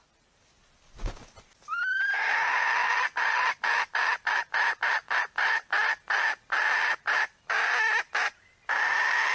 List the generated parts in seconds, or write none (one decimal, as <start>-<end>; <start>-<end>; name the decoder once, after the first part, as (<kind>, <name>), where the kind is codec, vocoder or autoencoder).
none

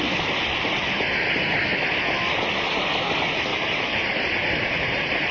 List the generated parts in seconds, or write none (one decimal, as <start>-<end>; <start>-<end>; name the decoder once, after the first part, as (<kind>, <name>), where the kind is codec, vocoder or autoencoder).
3.5-5.3 (vocoder, BigVGAN v2)

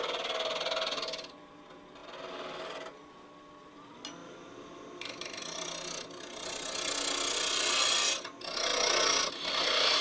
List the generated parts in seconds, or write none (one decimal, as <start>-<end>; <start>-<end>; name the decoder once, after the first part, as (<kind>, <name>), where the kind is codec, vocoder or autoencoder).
none

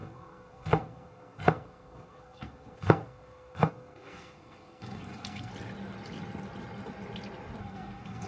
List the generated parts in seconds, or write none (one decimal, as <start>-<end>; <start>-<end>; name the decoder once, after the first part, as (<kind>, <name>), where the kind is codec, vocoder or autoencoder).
0.0-5.5 (codec, SNAC); 7.6-8.3

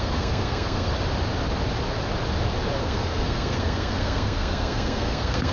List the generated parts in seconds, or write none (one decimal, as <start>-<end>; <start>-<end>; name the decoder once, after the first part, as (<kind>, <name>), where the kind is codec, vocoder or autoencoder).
0.0-0.9 (codec, SNAC); 2.8-5.5

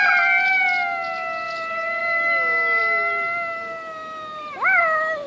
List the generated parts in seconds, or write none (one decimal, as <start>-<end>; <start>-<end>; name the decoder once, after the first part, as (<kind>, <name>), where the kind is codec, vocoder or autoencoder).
none

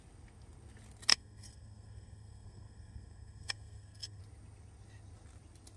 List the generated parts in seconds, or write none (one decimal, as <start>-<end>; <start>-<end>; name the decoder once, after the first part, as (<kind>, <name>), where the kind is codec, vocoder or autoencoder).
1.1-4.2 (codec, SNAC)